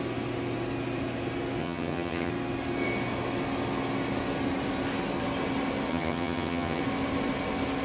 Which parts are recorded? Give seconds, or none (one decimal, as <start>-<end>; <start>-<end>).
0.0-1.6; 2.3-5.9; 6.8-7.8